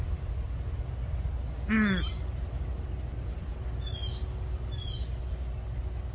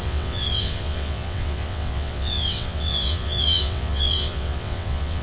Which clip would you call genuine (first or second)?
first